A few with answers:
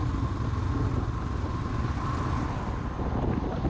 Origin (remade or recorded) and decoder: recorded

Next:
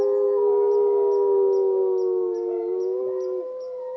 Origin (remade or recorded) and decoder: recorded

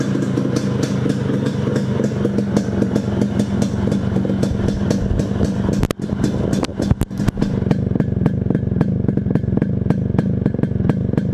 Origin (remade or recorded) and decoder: recorded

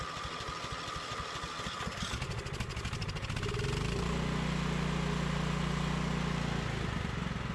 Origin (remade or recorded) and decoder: recorded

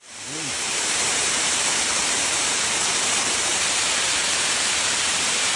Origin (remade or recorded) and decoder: remade, vocoder, BigVGAN v2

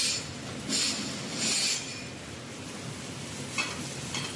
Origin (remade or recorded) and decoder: recorded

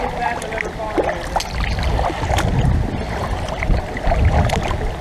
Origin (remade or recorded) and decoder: recorded